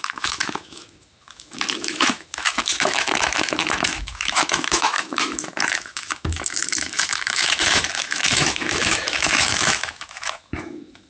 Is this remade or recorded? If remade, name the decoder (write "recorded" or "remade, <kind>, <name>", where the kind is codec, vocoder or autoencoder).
remade, autoencoder, DAC-VAE